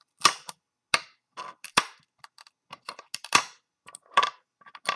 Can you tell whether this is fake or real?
real